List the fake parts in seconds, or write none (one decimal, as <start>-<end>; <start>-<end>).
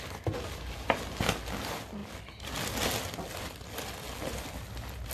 none